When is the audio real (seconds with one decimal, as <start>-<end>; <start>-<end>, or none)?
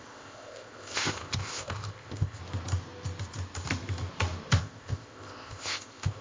2.4-4.6